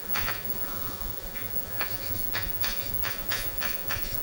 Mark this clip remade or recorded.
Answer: remade